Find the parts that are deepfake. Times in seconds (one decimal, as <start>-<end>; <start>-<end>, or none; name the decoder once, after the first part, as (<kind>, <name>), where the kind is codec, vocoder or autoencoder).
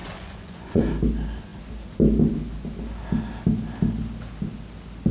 0.0-0.8 (vocoder, Vocos)